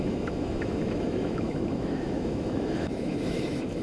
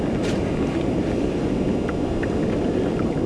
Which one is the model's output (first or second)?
first